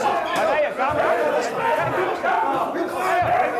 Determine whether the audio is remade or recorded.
recorded